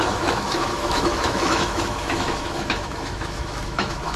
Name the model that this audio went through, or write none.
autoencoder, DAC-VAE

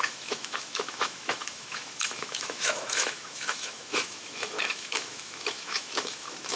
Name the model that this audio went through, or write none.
autoencoder, DAC-VAE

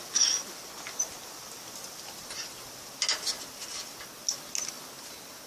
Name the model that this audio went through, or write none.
none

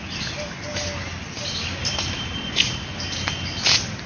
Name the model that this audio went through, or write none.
none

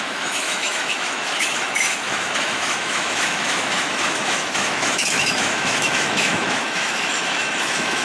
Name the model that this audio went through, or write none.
autoencoder, DAC-VAE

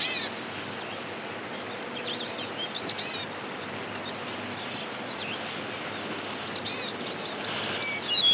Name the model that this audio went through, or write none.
none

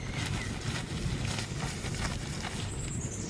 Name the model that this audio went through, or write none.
none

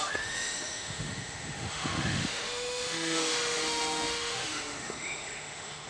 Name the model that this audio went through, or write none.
autoencoder, DAC-VAE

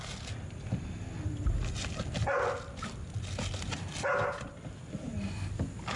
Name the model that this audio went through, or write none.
none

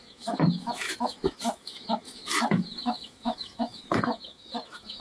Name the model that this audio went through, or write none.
autoencoder, DAC-VAE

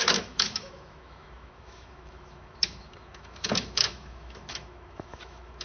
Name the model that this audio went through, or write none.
autoencoder, DAC-VAE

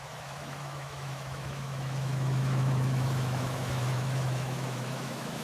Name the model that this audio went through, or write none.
autoencoder, DAC-VAE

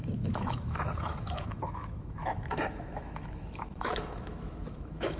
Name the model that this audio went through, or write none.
autoencoder, DAC-VAE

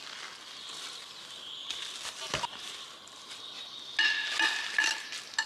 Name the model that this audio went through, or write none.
none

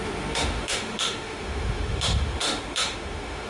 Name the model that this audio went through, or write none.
autoencoder, DAC-VAE